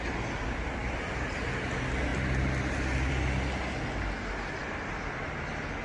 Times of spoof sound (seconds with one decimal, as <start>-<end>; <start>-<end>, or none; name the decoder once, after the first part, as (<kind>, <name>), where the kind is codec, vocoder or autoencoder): 2.1-3.1 (vocoder, BigVGAN v2); 4.6-5.2